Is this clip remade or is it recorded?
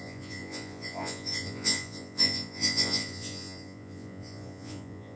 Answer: remade